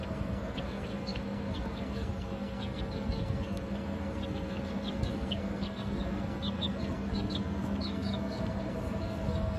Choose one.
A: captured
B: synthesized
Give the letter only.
B